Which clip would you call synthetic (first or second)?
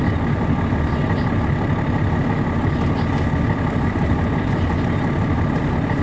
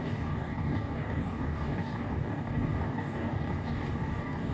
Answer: second